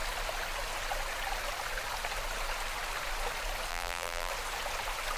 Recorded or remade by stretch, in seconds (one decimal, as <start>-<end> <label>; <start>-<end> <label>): 0.0-3.7 recorded; 3.7-4.3 remade; 4.3-5.2 recorded